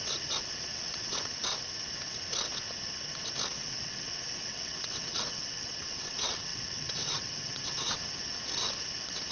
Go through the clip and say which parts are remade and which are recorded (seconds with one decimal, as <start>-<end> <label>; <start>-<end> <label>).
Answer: 0.0-1.5 remade; 1.5-3.5 recorded; 3.5-8.0 remade; 8.0-9.3 recorded